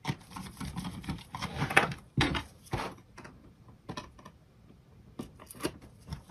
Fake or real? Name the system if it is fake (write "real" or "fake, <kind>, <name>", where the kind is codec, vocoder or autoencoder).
fake, vocoder, BigVGAN v2